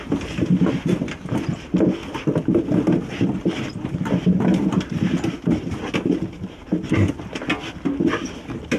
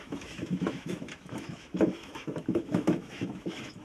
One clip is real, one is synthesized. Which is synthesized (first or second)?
second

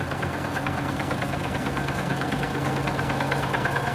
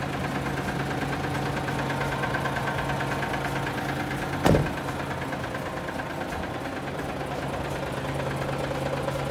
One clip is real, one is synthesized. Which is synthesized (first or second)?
first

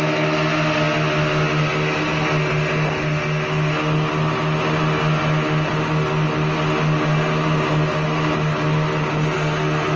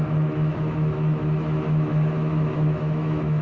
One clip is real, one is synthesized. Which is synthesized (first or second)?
second